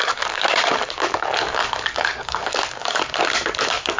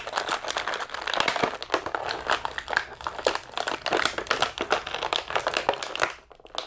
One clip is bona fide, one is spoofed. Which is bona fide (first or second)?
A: second